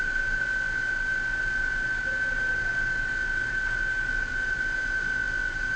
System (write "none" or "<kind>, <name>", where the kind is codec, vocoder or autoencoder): none